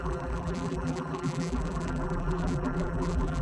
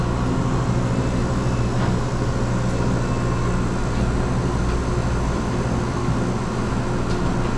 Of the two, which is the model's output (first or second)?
first